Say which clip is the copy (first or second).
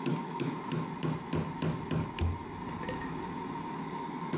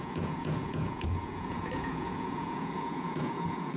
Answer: second